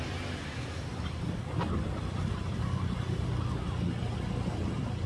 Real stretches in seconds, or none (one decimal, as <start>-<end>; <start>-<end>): 0.0-5.1